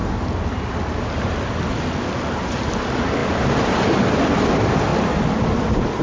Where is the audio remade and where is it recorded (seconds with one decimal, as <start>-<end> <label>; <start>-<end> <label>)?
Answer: 0.0-6.0 recorded